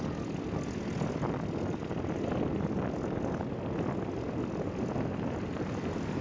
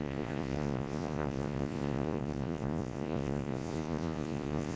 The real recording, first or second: first